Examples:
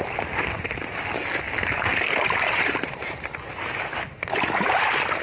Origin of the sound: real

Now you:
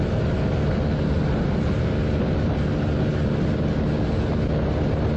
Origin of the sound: real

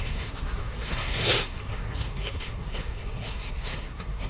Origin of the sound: fake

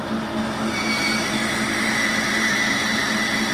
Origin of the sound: real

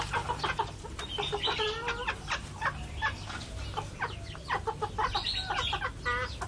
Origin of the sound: real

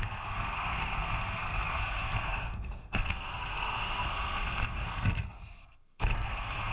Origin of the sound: fake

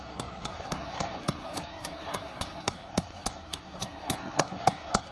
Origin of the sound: fake